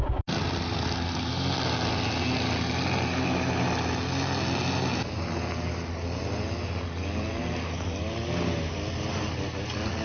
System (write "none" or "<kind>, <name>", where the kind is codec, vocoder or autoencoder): none